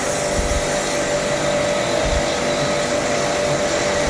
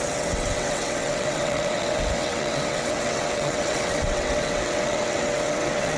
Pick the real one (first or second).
first